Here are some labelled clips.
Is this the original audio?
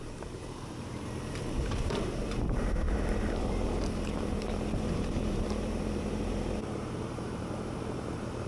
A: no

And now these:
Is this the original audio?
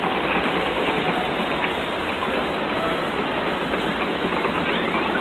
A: yes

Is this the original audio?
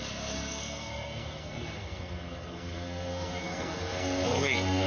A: no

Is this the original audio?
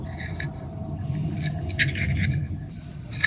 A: yes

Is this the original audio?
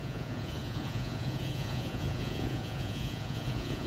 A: no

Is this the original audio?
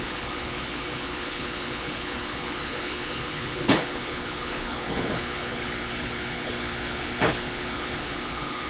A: no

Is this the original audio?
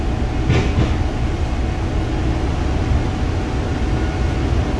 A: yes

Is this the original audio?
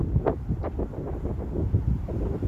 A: yes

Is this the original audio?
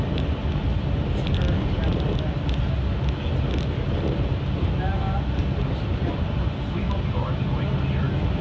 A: yes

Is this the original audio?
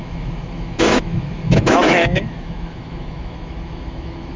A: no